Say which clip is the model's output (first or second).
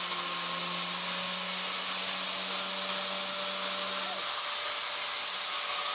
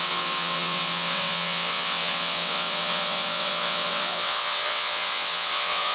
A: second